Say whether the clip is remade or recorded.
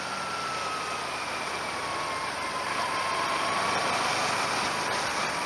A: recorded